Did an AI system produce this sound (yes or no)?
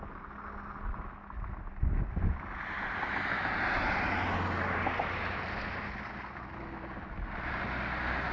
no